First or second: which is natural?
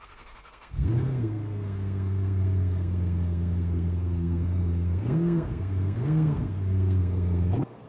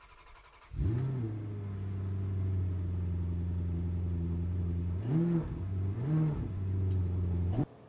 second